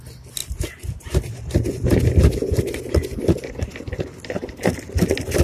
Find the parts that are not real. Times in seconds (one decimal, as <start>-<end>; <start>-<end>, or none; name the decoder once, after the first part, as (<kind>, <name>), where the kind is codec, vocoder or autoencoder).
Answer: 0.4-3.6 (vocoder, BigVGAN v2)